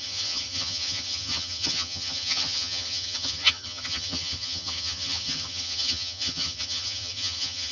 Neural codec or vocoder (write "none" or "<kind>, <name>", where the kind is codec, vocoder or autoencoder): vocoder, HiFi-GAN